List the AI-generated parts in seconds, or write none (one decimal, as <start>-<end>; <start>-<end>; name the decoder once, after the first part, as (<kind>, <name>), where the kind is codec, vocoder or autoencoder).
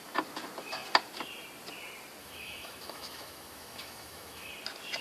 2.2-4.5 (autoencoder, DAC-VAE)